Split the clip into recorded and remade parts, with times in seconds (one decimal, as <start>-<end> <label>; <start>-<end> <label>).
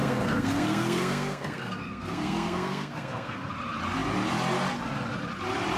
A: 0.0-3.5 remade; 3.5-5.8 recorded